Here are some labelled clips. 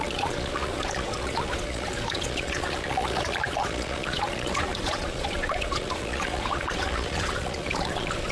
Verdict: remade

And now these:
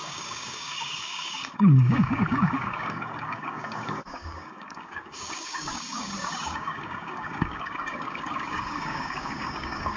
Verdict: remade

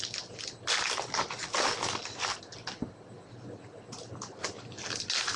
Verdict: recorded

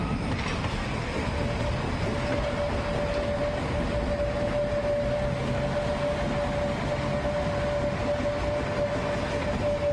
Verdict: recorded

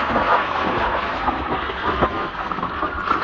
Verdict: remade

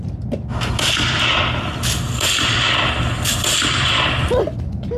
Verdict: recorded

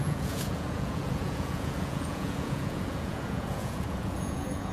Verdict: remade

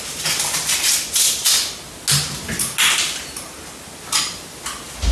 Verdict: recorded